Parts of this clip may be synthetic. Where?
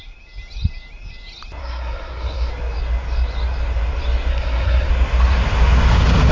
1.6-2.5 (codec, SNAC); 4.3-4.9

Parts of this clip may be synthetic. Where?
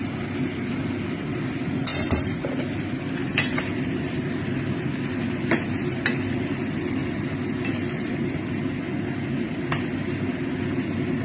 none